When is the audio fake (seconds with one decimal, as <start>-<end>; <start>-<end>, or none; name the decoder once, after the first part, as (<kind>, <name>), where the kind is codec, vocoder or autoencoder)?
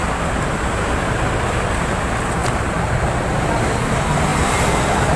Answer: 1.9-5.2 (vocoder, BigVGAN v2)